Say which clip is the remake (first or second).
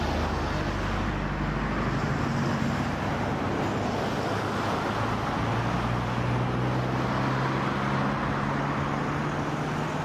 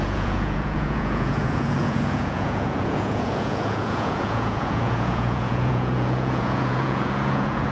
second